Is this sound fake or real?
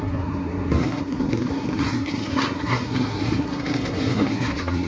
fake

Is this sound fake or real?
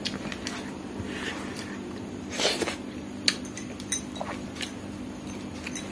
real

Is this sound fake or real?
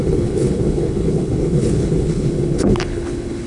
fake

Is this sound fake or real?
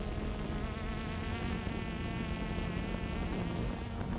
real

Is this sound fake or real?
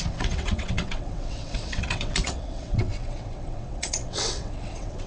fake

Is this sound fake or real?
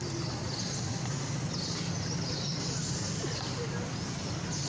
real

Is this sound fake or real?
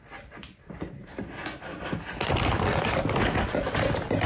real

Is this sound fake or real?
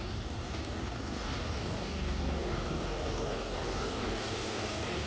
fake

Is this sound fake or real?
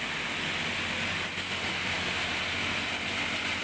real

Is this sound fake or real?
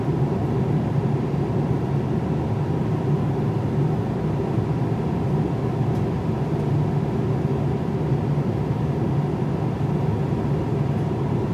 real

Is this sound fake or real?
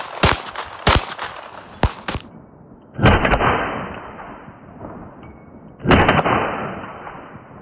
real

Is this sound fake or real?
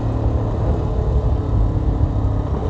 real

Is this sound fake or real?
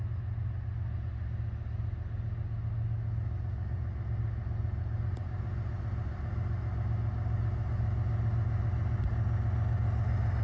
real